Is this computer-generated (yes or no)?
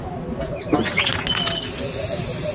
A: no